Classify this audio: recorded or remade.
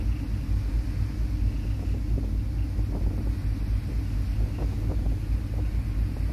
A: recorded